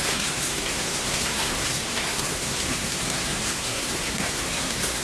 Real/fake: fake